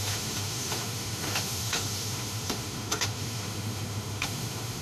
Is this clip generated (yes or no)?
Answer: yes